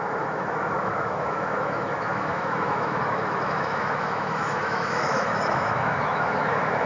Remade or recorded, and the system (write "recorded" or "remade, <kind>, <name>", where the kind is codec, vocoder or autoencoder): remade, autoencoder, DAC-VAE